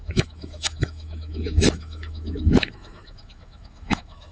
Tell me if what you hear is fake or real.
fake